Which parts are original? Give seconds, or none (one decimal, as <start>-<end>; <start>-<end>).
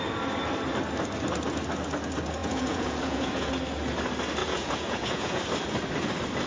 0.0-2.4; 3.5-4.4; 5.4-6.5